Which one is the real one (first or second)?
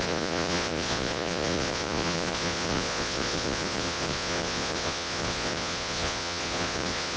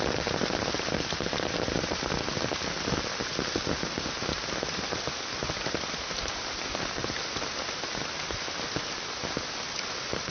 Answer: second